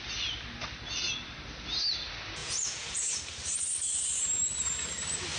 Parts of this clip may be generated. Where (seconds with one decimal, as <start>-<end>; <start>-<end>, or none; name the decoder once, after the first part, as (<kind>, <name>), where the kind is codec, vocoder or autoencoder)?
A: 2.4-3.2 (vocoder, Vocos)